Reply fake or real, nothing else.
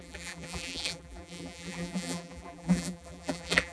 fake